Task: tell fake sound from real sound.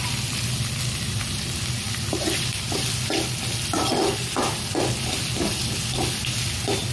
real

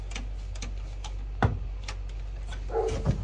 real